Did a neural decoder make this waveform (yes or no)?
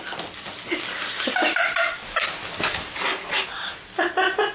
no